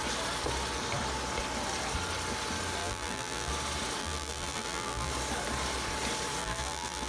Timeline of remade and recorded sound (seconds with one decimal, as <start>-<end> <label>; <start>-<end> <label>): 0.0-2.8 recorded; 2.8-3.5 remade; 3.5-4.0 recorded; 4.0-5.1 remade; 5.1-6.4 recorded; 6.4-7.1 remade